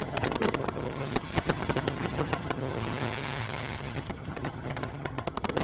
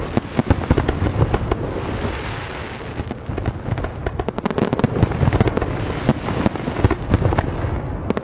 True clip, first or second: second